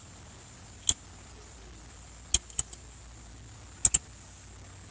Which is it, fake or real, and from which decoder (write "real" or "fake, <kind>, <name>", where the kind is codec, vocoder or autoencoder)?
real